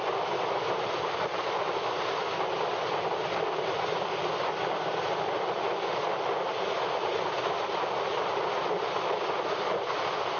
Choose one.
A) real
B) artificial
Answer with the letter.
A